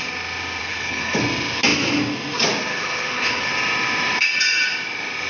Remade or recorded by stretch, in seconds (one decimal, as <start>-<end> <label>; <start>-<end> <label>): 0.0-0.6 recorded; 0.6-1.2 remade; 1.2-2.7 recorded; 2.7-3.5 remade; 3.5-5.3 recorded